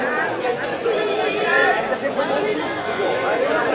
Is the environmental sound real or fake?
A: fake